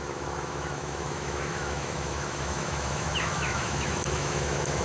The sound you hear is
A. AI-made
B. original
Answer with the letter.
A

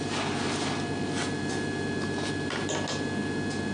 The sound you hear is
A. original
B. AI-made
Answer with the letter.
A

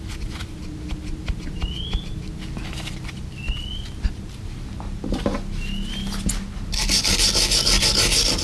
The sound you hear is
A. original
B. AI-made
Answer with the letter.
A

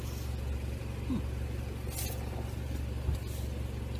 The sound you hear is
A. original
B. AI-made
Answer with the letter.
A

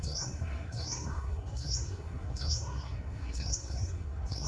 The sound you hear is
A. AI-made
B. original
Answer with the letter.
A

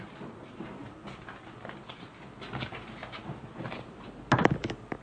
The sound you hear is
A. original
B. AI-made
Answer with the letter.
A